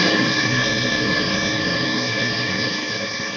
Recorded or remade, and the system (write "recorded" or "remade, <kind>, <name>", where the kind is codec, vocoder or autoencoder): remade, codec, SNAC